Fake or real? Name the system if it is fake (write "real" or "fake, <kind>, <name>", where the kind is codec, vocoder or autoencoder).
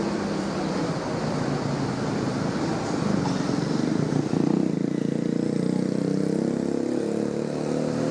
real